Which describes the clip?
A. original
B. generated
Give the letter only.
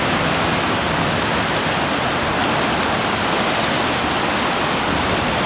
A